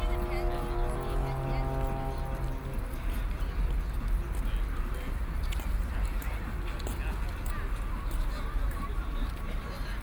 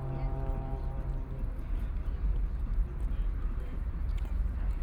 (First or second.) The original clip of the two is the first